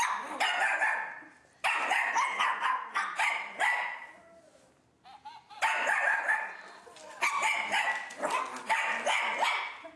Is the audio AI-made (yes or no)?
no